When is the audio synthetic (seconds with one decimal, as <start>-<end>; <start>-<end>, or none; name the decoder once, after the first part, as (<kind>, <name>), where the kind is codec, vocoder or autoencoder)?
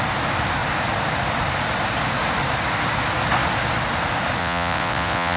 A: 4.4-5.4 (vocoder, WaveNeXt)